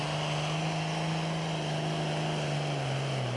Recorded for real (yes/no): yes